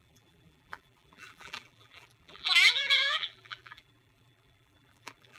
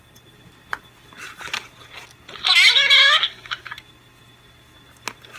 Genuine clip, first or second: second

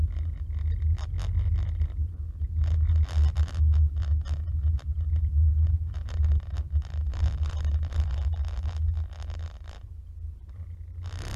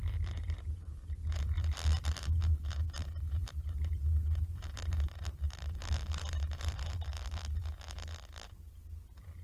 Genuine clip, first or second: first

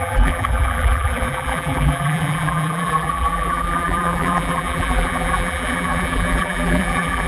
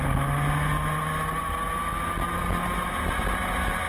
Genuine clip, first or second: second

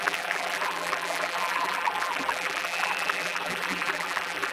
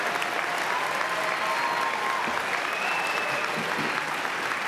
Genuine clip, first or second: second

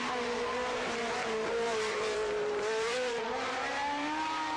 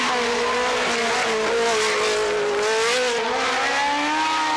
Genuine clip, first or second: second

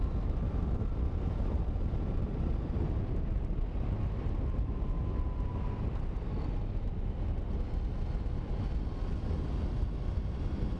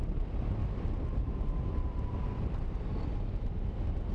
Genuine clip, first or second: first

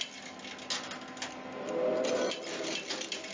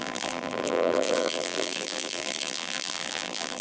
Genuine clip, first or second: first